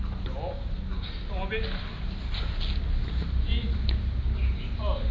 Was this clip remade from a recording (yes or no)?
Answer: no